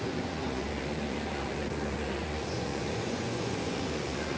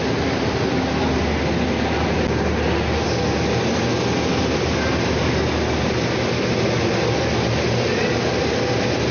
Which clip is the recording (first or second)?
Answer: second